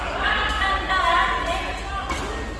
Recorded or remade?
recorded